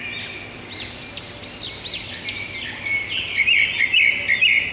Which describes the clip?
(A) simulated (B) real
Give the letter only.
B